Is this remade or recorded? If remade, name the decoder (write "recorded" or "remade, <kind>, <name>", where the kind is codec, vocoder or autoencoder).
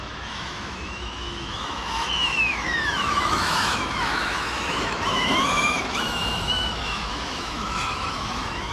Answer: remade, autoencoder, DAC-VAE